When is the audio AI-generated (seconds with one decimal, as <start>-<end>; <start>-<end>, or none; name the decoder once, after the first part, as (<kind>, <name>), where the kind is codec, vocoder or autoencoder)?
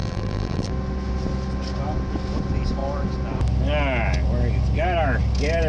0.0-0.7 (vocoder, BigVGAN v2)